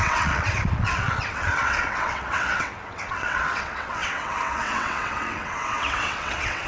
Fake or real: fake